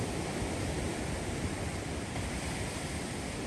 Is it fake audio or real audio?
real